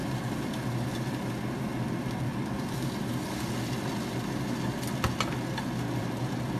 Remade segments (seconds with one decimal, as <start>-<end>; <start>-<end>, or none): none

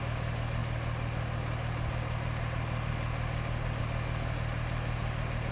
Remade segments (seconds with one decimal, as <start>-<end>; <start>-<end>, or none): none

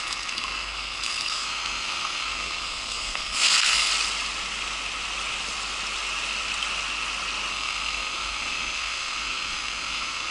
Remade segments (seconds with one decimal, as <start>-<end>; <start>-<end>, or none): 0.0-3.9; 7.5-10.3

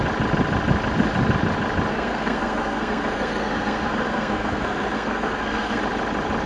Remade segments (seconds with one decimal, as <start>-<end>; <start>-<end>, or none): 1.9-5.8

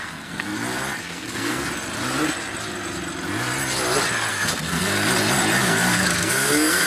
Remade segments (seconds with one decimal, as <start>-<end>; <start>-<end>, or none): 0.0-0.5; 1.0-1.7; 4.3-4.9; 5.6-6.9

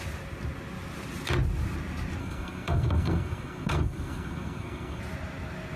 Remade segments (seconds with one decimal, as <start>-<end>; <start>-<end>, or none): 2.2-5.0